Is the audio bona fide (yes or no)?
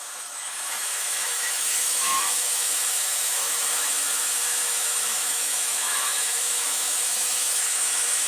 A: no